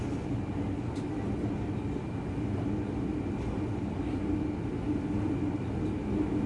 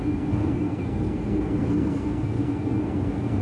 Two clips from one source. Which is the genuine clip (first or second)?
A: first